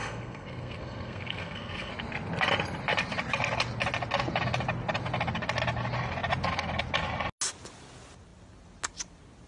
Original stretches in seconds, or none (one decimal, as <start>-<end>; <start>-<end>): 1.9-9.5